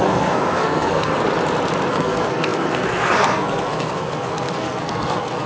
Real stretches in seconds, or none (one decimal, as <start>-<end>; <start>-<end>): 1.1-1.9